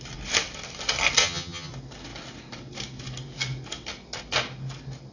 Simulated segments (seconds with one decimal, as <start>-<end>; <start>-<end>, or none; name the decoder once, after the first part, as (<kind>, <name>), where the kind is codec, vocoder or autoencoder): 1.2-1.7 (vocoder, HiFi-GAN)